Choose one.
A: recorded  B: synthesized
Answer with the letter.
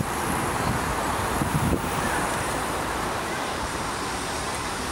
B